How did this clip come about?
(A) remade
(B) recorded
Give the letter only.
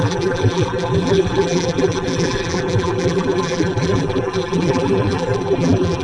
A